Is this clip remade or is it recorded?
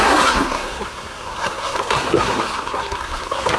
remade